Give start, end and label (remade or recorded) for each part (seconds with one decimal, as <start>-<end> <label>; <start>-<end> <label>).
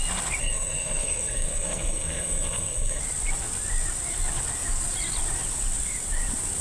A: 0.0-0.4 recorded; 0.4-3.0 remade; 3.0-6.6 recorded